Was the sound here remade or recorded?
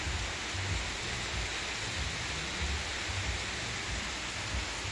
recorded